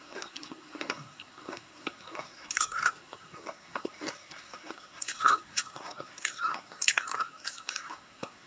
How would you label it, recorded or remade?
remade